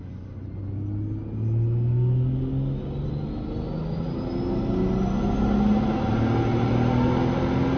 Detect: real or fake real